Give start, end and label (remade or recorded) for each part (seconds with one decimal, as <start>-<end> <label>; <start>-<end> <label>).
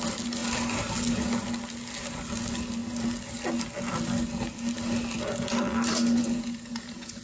0.0-6.2 recorded; 6.2-7.2 remade